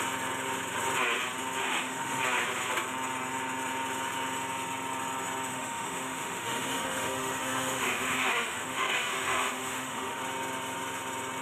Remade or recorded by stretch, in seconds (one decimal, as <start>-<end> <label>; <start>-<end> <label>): 0.0-1.6 recorded; 1.6-2.2 remade; 2.2-5.5 recorded; 5.5-10.2 remade; 10.2-11.4 recorded